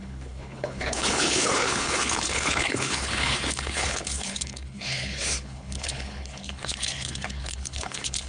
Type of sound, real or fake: fake